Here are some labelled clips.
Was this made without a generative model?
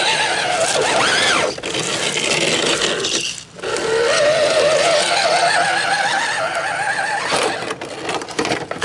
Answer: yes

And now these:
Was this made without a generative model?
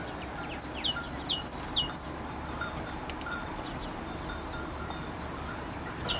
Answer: no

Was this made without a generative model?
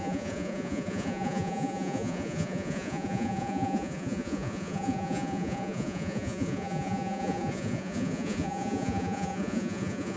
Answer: no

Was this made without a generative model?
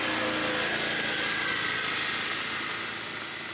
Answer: yes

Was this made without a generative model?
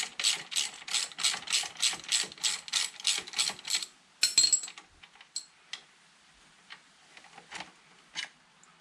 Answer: yes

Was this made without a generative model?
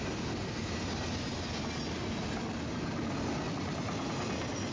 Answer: yes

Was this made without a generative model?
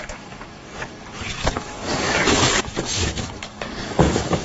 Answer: no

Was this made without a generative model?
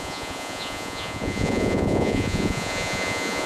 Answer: no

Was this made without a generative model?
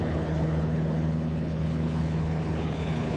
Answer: no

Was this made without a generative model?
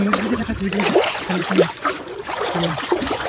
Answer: no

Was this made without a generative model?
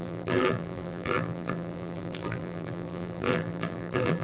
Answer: no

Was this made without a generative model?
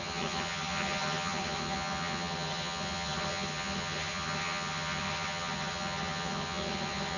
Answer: no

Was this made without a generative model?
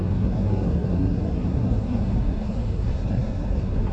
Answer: no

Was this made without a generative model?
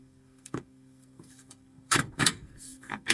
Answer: no